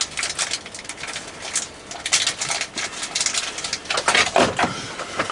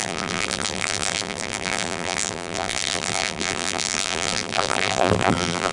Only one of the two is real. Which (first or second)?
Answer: first